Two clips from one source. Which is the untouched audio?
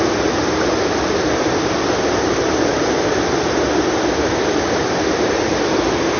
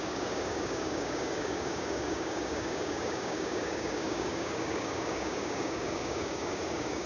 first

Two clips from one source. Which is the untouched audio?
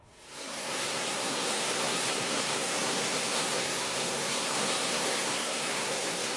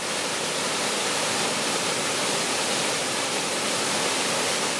second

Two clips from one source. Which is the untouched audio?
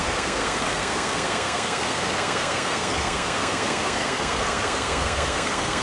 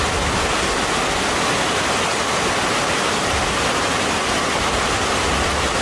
second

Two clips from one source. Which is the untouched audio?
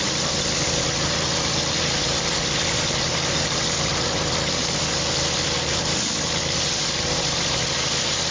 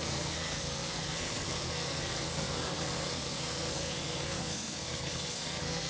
first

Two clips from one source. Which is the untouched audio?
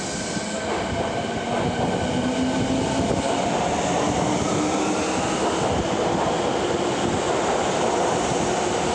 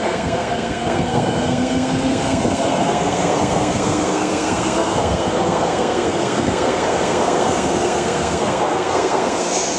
first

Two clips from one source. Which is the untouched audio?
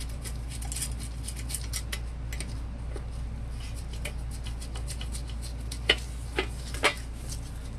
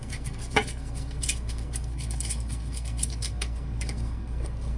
first